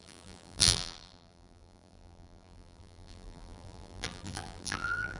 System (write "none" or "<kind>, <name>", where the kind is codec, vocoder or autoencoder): vocoder, BigVGAN v2